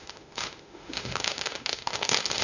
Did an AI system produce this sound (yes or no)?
yes